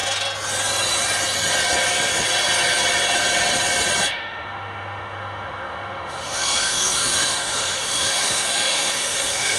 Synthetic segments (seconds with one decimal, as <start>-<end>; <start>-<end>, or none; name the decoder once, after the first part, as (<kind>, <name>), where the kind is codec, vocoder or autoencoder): 4.1-9.6 (autoencoder, DAC-VAE)